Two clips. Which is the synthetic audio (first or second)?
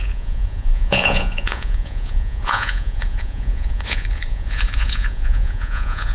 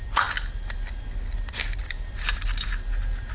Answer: first